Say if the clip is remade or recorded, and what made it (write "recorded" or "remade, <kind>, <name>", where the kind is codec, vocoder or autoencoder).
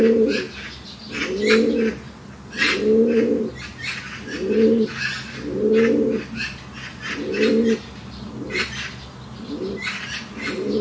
recorded